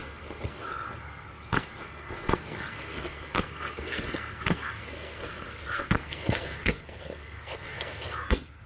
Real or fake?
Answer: fake